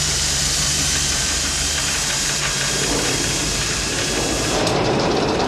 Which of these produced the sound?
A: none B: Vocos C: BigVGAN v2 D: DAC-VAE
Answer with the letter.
C